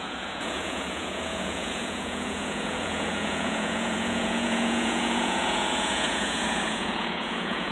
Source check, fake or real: fake